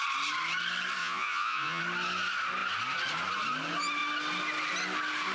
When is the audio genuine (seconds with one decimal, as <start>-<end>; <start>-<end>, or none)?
0.0-1.0; 1.8-5.3